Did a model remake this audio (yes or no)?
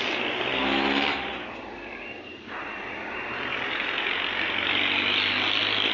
no